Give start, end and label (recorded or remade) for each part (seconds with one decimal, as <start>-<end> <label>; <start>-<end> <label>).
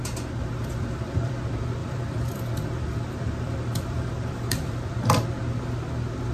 0.0-0.6 recorded; 0.6-1.3 remade; 1.3-1.8 recorded; 1.8-5.4 remade; 5.4-6.3 recorded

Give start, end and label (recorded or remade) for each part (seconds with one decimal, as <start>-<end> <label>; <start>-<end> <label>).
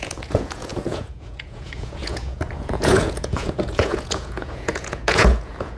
0.0-5.8 remade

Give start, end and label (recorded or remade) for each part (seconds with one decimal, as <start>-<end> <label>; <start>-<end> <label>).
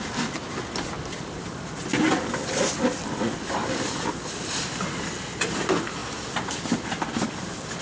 0.0-7.8 recorded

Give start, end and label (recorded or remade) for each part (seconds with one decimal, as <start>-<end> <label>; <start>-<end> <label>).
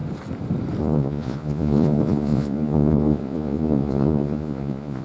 0.0-0.8 recorded; 0.8-5.0 remade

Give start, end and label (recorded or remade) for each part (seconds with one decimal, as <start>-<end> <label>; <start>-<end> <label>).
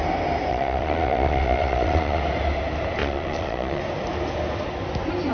0.0-0.5 recorded; 0.5-2.2 remade; 2.2-3.0 recorded; 3.0-3.8 remade; 3.8-5.3 recorded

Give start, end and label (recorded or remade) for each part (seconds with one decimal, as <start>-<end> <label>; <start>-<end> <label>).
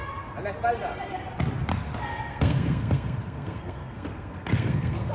0.0-1.7 recorded; 1.7-5.1 remade